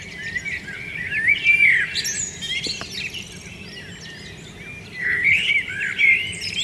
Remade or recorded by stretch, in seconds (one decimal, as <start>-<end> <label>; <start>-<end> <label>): 0.0-5.0 recorded; 5.0-5.5 remade; 5.5-6.6 recorded